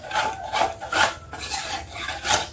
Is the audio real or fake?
real